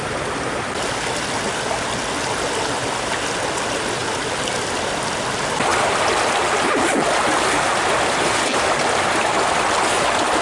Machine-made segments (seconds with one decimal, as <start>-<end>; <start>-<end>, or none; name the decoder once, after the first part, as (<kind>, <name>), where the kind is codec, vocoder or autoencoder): 4.0-4.6 (vocoder, BigVGAN v2); 5.7-6.4